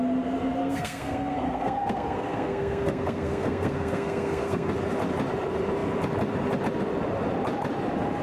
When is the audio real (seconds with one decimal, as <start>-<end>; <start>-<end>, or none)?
0.0-0.6; 4.7-8.2